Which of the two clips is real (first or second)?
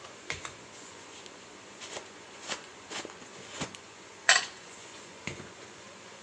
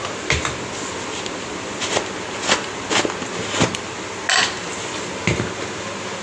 second